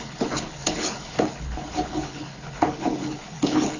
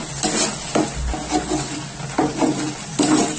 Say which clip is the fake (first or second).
first